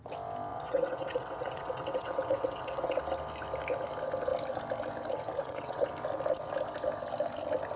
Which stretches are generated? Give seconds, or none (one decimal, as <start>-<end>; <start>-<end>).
0.5-3.0; 5.4-5.9